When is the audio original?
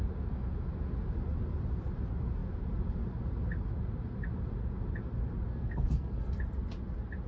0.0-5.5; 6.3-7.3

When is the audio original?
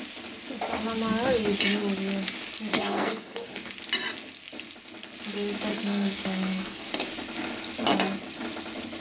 0.0-2.7; 3.7-5.7; 6.9-9.0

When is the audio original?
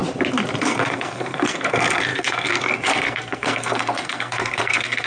0.0-0.6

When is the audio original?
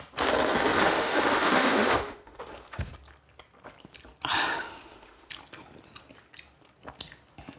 0.0-0.8; 2.9-4.5; 5.3-7.6